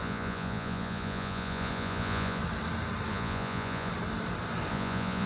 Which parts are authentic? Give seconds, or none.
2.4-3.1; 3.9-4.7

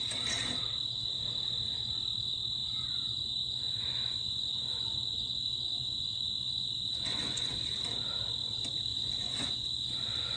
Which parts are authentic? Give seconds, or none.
0.0-2.6; 7.5-8.9

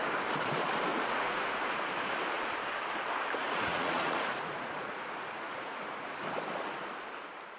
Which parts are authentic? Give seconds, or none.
0.0-0.9; 1.7-3.4; 6.2-7.6

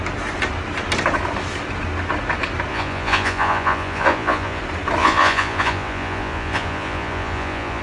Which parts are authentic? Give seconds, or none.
0.0-2.7; 4.6-5.0

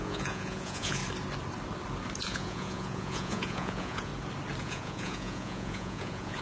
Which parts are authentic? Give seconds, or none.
1.0-2.2; 4.1-4.6